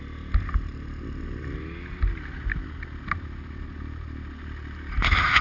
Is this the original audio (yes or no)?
yes